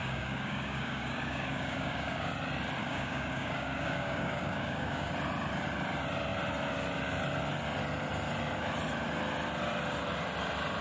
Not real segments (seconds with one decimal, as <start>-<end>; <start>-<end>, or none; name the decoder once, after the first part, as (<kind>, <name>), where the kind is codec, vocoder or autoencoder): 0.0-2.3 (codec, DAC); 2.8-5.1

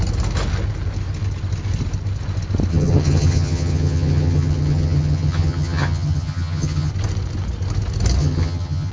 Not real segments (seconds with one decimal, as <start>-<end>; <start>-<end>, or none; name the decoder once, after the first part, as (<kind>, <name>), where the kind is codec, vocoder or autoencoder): 2.7-6.9 (vocoder, HiFi-GAN); 8.2-8.9

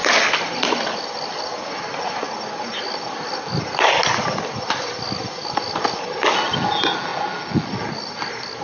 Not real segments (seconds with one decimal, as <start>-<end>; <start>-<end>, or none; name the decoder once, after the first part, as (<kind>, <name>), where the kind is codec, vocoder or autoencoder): none